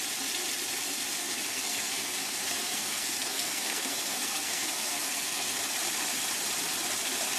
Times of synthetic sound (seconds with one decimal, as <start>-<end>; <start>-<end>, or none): 1.2-5.6